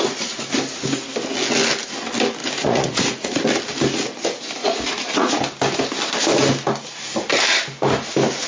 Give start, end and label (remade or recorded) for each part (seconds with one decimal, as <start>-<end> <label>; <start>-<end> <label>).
0.0-2.4 recorded; 2.4-3.4 remade; 3.4-4.6 recorded; 4.6-5.4 remade; 5.4-8.5 recorded